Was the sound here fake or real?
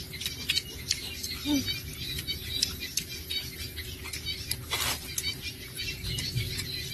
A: real